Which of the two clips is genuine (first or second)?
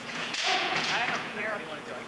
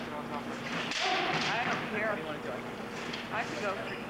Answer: second